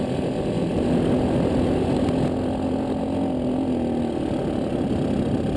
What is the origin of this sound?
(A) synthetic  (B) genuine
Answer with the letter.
B